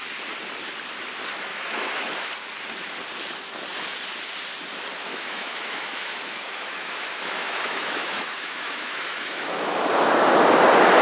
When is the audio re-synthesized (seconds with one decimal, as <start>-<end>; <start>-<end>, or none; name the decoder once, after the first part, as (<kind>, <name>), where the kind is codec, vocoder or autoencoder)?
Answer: 1.5-2.3 (autoencoder, DAC-VAE); 5.1-9.9